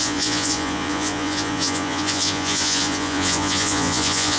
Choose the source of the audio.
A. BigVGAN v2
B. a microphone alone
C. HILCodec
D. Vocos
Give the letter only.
D